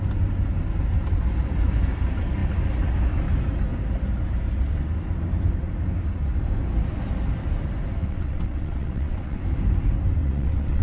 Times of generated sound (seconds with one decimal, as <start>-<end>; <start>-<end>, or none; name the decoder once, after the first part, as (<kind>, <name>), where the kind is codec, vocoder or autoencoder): 8.0-9.4 (vocoder, WaveNeXt); 10.2-10.8